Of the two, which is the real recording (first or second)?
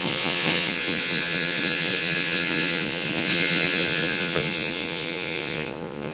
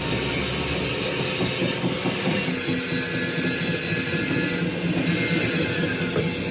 second